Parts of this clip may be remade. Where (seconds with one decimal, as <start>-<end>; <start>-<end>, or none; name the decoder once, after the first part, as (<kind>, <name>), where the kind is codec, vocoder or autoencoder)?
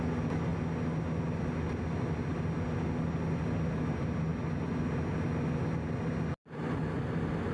none